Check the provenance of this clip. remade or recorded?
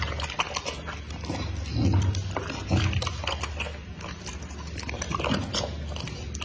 recorded